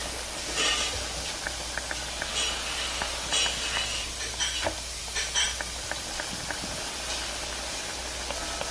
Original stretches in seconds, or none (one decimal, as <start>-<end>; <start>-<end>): 0.0-8.7